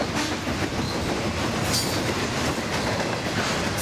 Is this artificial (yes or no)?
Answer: no